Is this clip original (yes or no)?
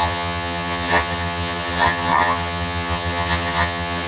no